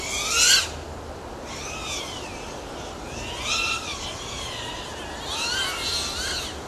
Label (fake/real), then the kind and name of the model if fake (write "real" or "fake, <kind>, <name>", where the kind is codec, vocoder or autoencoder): real